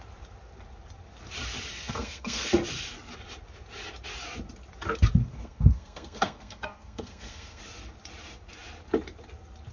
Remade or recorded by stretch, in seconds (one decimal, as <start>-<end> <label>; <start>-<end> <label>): 0.0-1.7 recorded; 1.7-2.5 remade; 2.5-5.2 recorded; 5.2-7.6 remade; 7.6-9.7 recorded